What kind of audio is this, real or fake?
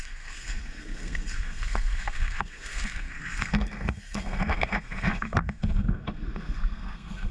fake